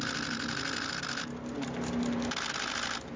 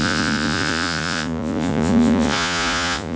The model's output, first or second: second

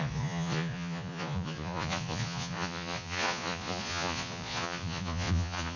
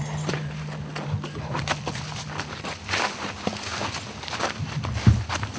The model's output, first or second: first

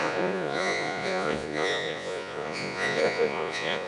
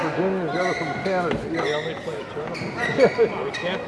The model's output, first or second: first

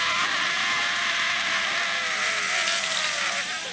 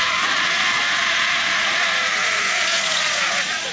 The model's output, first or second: second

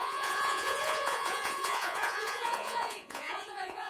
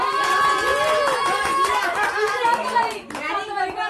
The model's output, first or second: first